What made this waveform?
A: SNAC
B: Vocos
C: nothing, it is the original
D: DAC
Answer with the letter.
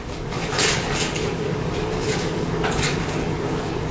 D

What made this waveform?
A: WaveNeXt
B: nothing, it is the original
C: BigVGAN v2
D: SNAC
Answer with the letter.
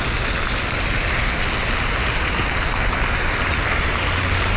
B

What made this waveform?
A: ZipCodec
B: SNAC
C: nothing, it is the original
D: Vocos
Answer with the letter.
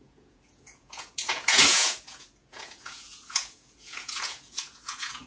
D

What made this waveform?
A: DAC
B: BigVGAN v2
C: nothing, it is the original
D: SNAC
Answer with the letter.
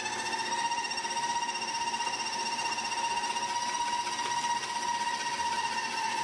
C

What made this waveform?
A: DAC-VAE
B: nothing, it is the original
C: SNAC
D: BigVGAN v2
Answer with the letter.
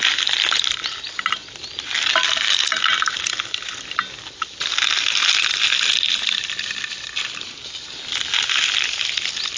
B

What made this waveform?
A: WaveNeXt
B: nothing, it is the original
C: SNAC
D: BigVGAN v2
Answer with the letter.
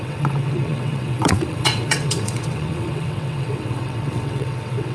A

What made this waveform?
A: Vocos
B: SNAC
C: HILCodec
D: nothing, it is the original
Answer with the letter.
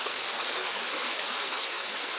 B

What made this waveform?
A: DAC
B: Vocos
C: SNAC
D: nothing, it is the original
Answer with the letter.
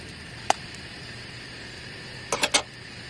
D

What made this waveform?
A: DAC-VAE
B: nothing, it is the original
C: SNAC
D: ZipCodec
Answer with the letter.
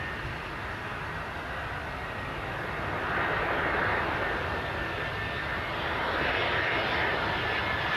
B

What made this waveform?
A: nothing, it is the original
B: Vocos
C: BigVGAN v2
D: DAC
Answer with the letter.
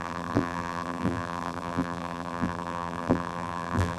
C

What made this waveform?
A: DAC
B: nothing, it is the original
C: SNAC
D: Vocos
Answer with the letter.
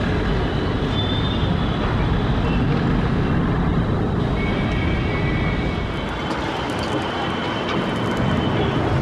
B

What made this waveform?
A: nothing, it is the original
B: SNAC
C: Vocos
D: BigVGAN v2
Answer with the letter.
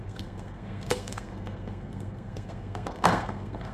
B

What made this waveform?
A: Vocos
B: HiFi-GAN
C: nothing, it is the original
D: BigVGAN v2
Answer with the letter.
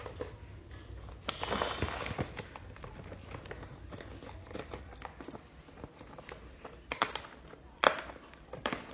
C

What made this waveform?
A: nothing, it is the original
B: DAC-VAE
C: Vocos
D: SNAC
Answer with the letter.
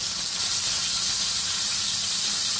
A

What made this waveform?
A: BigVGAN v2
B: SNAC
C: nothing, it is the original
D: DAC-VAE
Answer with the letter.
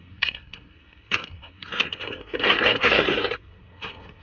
B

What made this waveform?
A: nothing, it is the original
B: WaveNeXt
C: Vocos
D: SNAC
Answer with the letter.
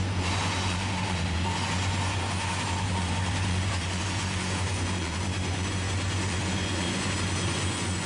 C